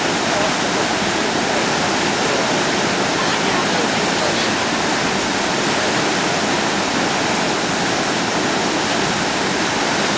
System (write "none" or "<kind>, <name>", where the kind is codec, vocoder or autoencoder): none